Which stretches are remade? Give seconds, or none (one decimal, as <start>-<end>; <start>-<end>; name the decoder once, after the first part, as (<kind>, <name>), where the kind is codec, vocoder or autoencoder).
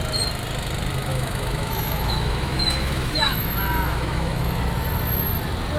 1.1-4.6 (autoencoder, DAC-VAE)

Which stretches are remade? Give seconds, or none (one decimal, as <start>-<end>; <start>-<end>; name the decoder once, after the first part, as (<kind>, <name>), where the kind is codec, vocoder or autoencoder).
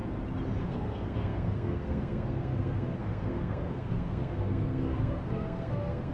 0.6-6.1 (codec, SNAC)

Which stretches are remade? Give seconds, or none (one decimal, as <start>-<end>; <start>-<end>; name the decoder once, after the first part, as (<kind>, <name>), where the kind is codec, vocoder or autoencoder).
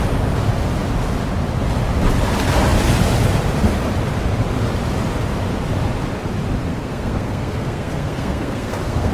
6.7-9.1 (codec, SNAC)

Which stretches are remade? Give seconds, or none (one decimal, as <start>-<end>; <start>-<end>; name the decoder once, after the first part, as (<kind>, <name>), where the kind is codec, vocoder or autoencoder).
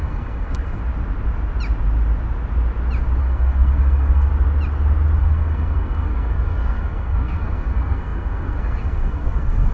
0.0-0.8 (codec, SNAC); 3.2-4.3; 5.2-9.7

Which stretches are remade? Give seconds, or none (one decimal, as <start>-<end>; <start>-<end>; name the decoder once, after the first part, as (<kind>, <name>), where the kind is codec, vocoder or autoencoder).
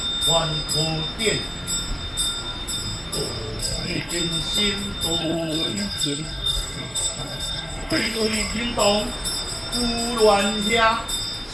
3.6-4.2 (codec, SNAC); 5.2-8.6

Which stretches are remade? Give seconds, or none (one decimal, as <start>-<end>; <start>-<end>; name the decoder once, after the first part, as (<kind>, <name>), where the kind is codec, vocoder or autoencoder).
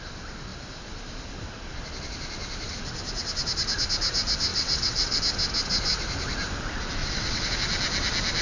4.5-5.2 (vocoder, WaveNeXt); 7.0-7.5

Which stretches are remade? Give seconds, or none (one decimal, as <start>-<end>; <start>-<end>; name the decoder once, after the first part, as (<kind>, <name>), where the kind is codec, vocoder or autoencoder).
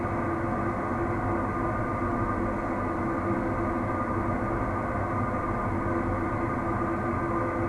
none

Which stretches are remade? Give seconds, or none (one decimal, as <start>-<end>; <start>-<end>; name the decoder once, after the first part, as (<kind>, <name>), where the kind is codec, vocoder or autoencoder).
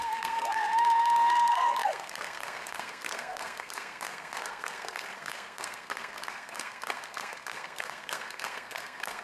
0.0-9.2 (codec, SNAC)